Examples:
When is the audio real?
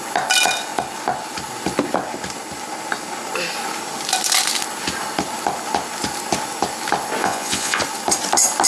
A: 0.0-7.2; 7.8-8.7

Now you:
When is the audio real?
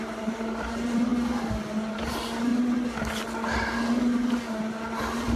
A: 1.1-1.9; 2.5-5.0